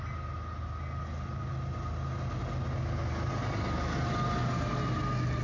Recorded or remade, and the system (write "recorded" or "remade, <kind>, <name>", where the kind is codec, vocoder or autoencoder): recorded